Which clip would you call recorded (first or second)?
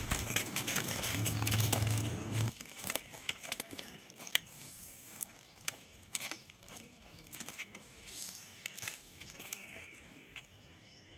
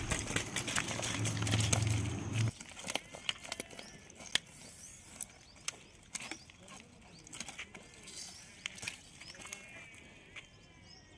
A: second